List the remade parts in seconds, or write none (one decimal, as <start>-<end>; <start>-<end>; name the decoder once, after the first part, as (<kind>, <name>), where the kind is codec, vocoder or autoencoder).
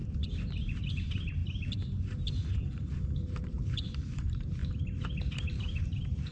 0.9-1.4 (vocoder, BigVGAN v2); 3.1-4.6; 5.5-6.3